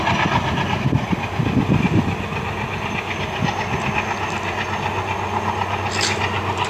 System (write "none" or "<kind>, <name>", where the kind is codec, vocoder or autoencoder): none